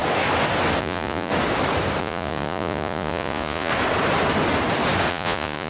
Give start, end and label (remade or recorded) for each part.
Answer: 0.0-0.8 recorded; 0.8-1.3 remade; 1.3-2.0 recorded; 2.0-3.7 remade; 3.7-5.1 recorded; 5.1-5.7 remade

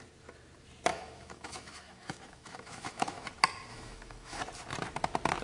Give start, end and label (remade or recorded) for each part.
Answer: 0.0-0.9 recorded; 0.9-3.3 remade; 3.3-3.7 recorded; 3.7-4.4 remade; 4.4-5.4 recorded

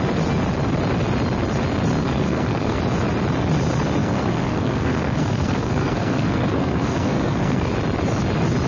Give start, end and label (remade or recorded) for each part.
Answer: 0.0-2.0 recorded; 2.0-2.8 remade; 2.8-4.0 recorded; 4.0-7.7 remade; 7.7-8.7 recorded

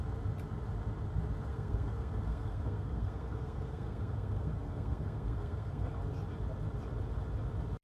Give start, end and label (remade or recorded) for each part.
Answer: 0.0-1.5 recorded; 1.5-5.9 remade; 5.9-7.8 recorded

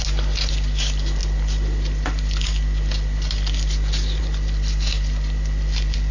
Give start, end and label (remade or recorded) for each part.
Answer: 0.0-6.1 recorded